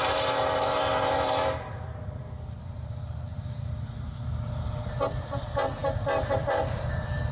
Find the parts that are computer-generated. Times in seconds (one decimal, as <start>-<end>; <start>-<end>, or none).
0.0-7.3